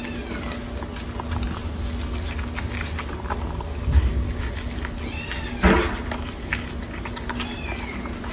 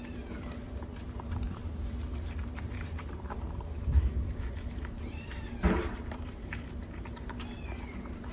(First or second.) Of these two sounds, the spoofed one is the second